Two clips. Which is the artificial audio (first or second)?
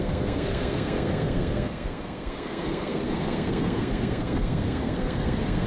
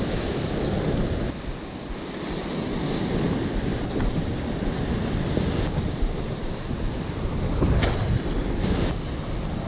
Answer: first